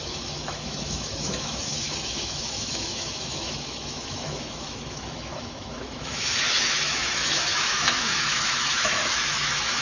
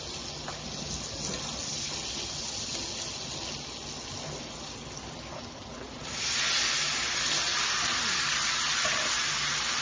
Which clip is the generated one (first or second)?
first